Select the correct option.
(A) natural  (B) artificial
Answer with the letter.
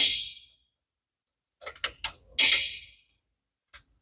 A